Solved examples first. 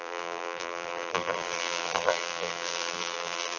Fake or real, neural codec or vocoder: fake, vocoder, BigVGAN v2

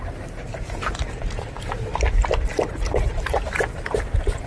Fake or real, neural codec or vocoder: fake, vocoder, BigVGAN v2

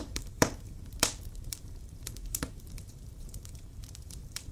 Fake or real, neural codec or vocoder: fake, vocoder, BigVGAN v2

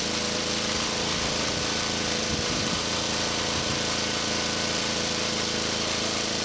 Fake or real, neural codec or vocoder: fake, vocoder, BigVGAN v2